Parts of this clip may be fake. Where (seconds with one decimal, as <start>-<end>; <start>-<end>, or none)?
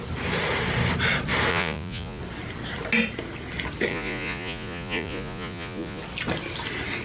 1.5-2.2; 3.9-6.0